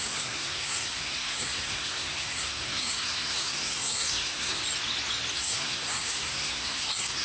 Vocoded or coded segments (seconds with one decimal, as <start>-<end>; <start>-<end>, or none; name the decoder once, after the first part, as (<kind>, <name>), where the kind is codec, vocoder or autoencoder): 0.0-4.6 (codec, SNAC); 5.3-7.2